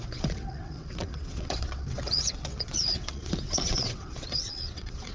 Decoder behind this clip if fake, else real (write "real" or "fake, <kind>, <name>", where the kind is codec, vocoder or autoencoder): fake, vocoder, WaveNeXt